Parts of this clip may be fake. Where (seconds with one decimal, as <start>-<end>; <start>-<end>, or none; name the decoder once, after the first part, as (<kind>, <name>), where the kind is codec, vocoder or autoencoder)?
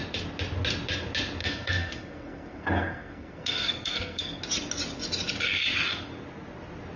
1.4-4.4 (codec, SNAC)